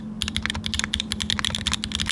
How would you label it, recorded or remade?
recorded